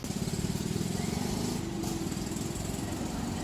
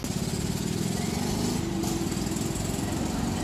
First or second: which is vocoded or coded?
first